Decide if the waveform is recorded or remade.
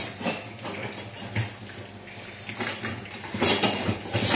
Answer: recorded